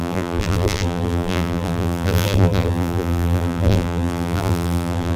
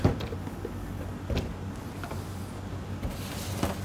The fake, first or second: first